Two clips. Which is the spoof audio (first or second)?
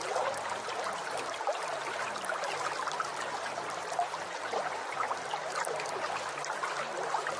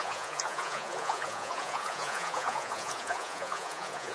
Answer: second